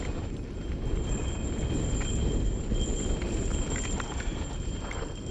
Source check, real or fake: real